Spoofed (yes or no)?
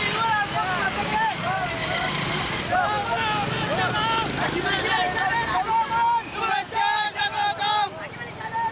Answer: no